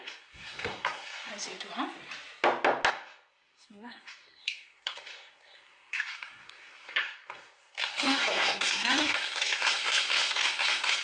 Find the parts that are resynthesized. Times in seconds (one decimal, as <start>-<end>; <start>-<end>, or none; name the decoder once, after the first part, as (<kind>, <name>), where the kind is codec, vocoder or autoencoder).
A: 0.0-1.3 (codec, SNAC); 2.9-11.0